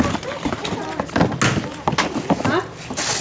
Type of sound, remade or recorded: recorded